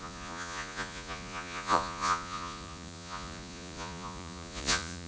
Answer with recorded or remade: remade